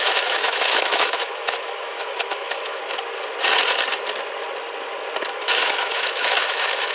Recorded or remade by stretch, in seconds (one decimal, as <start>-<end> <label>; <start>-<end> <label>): 0.0-2.8 remade; 2.8-5.4 recorded; 5.4-6.9 remade